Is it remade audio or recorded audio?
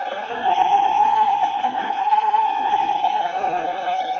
remade